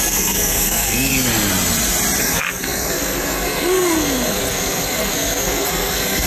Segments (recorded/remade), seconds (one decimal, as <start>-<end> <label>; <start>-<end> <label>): 0.0-1.1 remade; 1.1-2.2 recorded; 2.2-6.3 remade